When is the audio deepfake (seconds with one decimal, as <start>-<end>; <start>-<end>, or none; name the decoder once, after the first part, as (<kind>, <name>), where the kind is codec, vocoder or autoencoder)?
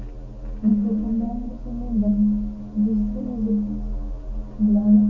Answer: 0.7-1.5 (vocoder, Vocos)